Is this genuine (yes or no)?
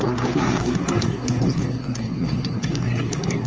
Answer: no